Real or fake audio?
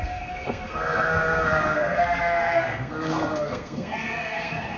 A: fake